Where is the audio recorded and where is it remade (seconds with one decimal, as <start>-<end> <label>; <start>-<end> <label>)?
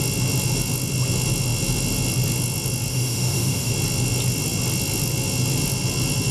0.0-2.9 recorded; 2.9-3.7 remade; 3.7-6.3 recorded